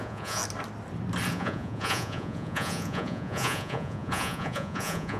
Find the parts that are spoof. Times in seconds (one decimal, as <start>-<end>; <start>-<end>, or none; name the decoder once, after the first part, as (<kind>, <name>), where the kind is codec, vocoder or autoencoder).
0.0-0.4 (vocoder, Vocos); 1.3-5.2